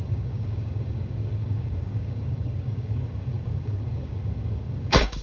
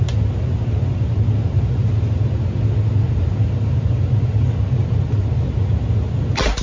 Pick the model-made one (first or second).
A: first